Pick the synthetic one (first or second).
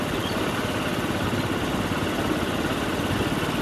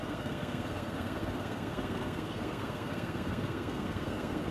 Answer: second